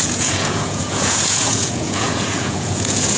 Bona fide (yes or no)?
no